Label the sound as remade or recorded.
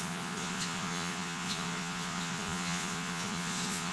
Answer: remade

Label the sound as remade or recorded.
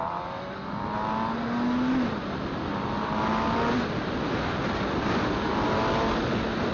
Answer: recorded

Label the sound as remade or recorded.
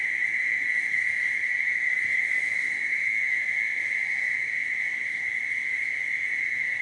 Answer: recorded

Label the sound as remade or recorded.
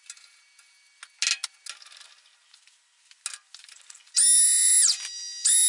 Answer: recorded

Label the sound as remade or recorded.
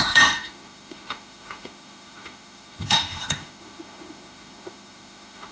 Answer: remade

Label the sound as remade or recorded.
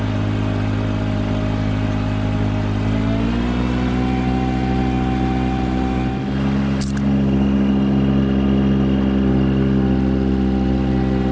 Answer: recorded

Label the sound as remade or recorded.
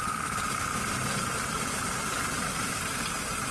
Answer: recorded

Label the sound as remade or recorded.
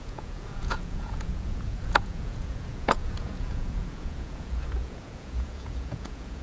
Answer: remade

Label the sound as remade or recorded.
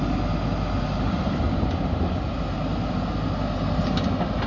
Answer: recorded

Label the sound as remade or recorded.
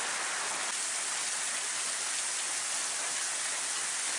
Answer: recorded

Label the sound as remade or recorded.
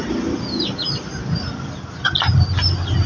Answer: recorded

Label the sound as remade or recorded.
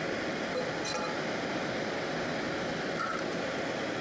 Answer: recorded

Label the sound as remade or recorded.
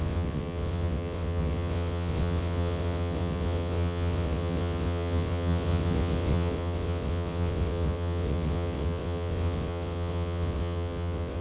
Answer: remade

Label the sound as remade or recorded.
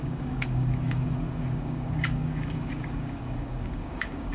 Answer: remade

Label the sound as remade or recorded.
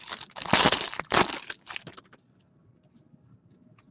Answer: recorded